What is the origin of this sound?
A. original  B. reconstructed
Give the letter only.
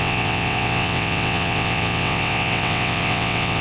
B